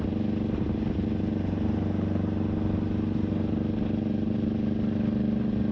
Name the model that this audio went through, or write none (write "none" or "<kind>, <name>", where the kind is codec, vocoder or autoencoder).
none